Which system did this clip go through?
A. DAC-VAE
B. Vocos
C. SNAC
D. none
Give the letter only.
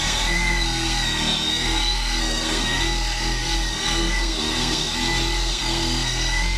C